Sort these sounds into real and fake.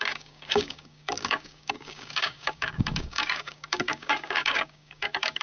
fake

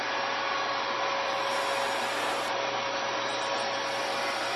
real